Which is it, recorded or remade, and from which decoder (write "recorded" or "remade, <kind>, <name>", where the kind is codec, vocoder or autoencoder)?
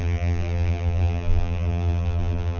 remade, vocoder, BigVGAN v2